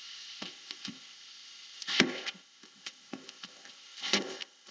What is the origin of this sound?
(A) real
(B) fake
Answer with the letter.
B